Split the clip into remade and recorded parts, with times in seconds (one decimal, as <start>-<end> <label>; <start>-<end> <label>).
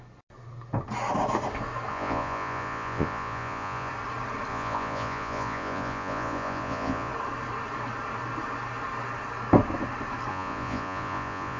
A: 0.0-1.9 recorded; 1.9-3.9 remade; 3.9-4.5 recorded; 4.5-7.1 remade; 7.1-10.3 recorded; 10.3-11.6 remade